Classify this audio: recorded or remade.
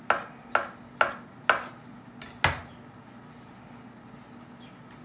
recorded